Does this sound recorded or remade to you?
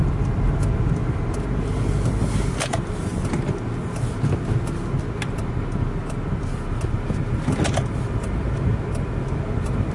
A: recorded